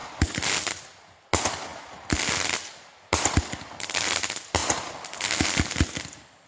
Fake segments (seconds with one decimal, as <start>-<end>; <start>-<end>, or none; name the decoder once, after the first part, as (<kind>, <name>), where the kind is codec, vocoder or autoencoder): none